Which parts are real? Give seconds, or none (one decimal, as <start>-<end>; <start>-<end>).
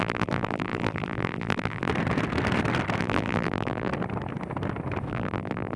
1.9-3.0; 3.9-5.1